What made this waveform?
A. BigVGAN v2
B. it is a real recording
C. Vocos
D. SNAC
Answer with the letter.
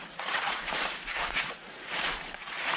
C